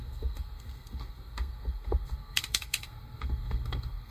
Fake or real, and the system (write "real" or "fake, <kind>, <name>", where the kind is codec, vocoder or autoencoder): fake, codec, SNAC